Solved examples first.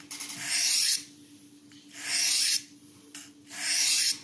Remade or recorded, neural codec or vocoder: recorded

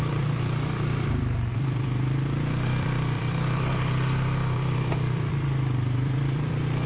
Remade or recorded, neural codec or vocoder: remade, vocoder, BigVGAN v2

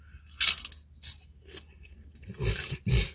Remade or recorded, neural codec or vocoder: recorded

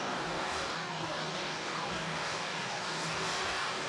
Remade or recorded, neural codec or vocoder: remade, codec, DAC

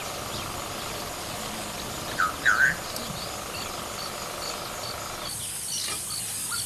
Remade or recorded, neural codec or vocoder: recorded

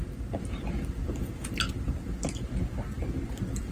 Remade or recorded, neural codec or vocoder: recorded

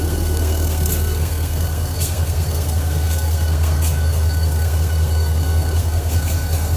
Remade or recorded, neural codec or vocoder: remade, codec, SNAC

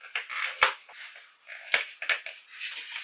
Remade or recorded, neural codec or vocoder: recorded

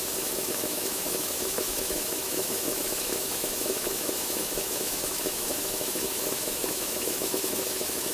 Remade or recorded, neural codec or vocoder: remade, autoencoder, DAC-VAE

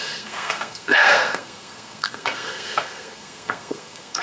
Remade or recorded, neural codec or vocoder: remade, codec, SNAC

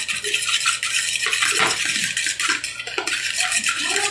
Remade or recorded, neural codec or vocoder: recorded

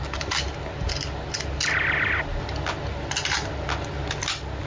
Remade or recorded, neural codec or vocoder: recorded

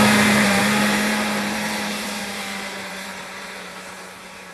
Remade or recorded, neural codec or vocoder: remade, vocoder, BigVGAN v2